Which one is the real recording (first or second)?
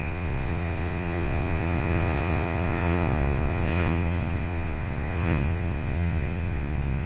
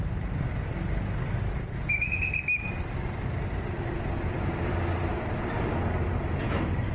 second